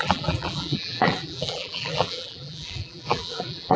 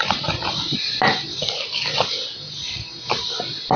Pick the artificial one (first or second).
first